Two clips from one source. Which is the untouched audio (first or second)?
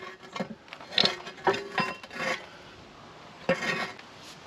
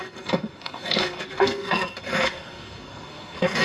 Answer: first